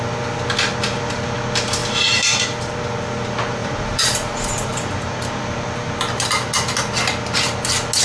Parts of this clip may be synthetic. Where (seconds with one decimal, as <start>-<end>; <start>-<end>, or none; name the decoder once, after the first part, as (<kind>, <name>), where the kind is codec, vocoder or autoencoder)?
1.8-2.4 (vocoder, BigVGAN v2); 3.6-5.4